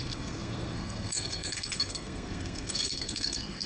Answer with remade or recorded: remade